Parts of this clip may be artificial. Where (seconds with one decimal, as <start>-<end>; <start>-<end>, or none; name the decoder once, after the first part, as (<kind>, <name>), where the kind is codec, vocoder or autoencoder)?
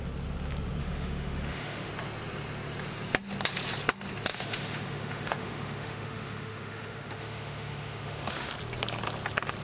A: 0.8-1.9 (autoencoder, DAC-VAE); 4.3-8.5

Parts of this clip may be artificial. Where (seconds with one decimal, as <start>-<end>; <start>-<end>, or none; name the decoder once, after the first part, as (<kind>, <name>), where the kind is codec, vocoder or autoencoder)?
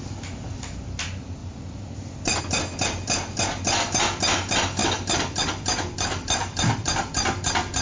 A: 1.4-2.4 (vocoder, BigVGAN v2); 4.8-7.8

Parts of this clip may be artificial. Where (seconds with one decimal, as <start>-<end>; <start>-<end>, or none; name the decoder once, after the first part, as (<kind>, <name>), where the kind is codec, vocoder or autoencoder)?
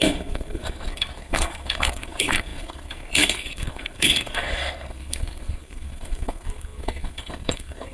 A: 0.0-7.9 (codec, SNAC)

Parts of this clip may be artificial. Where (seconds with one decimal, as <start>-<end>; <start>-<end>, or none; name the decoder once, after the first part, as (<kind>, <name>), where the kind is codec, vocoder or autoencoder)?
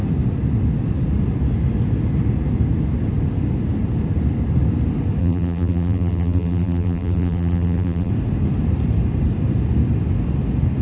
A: 5.2-8.1 (vocoder, BigVGAN v2)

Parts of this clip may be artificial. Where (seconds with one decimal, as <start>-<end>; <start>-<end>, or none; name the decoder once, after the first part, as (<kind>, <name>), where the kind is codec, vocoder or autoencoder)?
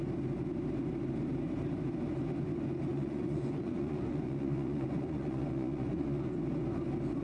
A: 2.9-6.3 (vocoder, Vocos)